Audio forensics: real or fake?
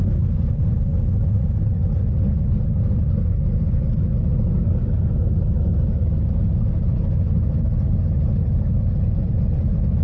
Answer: real